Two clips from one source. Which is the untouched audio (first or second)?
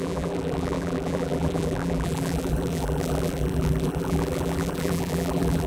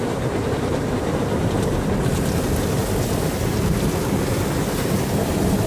second